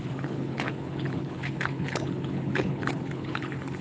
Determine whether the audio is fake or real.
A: fake